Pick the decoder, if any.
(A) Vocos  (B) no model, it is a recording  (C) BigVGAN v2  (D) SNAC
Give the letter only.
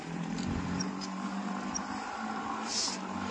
C